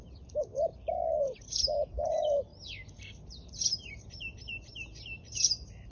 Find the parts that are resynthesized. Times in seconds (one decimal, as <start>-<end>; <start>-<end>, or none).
0.0-2.5; 3.6-5.9